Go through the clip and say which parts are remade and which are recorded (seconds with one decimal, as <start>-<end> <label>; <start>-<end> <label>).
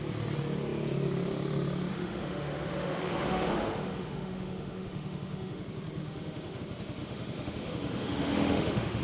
0.0-1.9 recorded; 1.9-5.6 remade; 5.6-6.0 recorded; 6.0-6.6 remade; 6.6-7.0 recorded; 7.0-9.0 remade